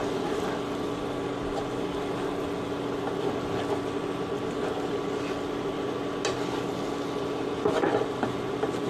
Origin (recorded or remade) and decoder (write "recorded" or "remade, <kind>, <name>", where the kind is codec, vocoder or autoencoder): recorded